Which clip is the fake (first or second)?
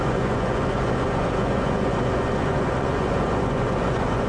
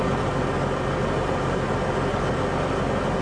first